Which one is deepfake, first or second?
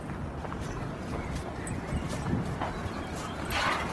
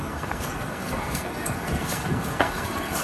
second